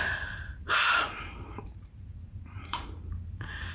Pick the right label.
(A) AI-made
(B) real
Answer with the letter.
A